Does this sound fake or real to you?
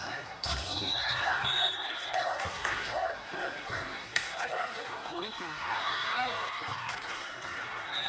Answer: fake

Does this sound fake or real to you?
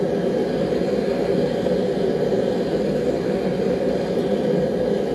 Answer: real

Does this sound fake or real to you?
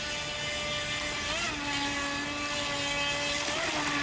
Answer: real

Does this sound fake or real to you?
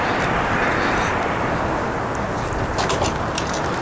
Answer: real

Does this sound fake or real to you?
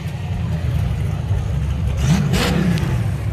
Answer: real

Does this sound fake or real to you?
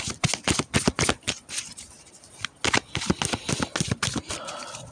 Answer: real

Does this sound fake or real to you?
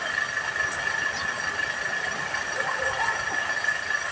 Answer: real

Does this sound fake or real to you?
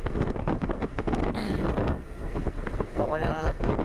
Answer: fake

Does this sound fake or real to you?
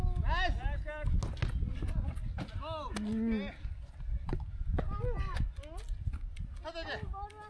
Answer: real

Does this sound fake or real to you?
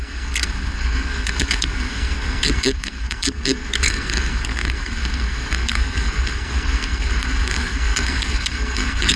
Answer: fake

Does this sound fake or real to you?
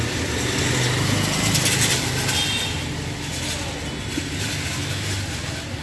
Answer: real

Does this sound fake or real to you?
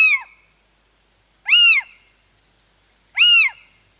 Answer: real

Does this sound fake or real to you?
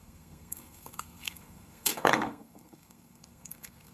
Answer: fake